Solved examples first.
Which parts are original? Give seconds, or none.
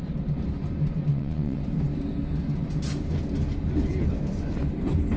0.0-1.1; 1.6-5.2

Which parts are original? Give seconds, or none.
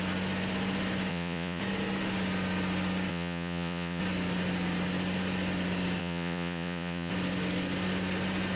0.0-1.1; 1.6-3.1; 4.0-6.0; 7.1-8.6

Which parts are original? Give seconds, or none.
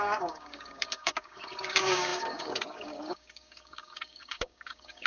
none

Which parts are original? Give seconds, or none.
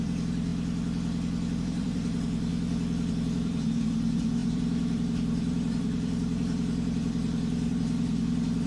0.5-1.6; 2.5-3.1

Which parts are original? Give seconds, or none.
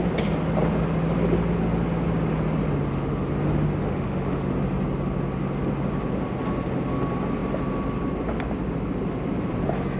0.0-3.8; 4.5-10.0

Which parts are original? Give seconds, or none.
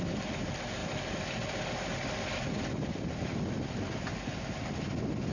0.0-5.3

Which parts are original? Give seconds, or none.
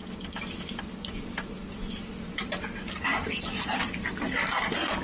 0.0-5.0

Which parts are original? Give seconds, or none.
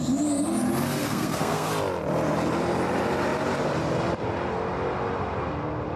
0.0-1.0; 1.7-6.0